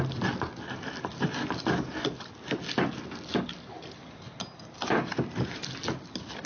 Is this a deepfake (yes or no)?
no